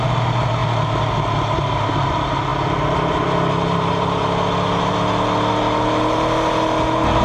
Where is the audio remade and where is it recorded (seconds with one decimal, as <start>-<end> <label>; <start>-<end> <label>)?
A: 0.0-7.2 recorded